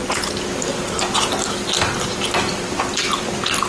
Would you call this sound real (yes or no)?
yes